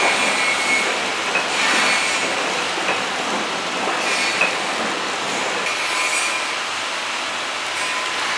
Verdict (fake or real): real